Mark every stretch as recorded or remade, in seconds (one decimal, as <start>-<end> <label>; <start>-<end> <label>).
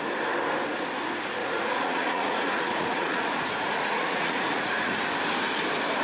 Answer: 0.0-1.4 recorded; 1.4-5.0 remade; 5.0-6.0 recorded